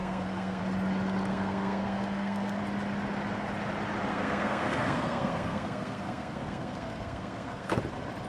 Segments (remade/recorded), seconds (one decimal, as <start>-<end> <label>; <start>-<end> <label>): 0.0-0.6 remade; 0.6-1.3 recorded; 1.3-2.6 remade; 2.6-4.1 recorded; 4.1-7.8 remade; 7.8-8.3 recorded